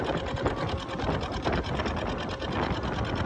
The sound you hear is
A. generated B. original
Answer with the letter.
B